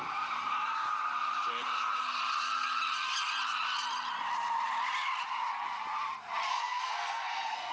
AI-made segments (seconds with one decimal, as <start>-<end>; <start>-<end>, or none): 6.5-7.7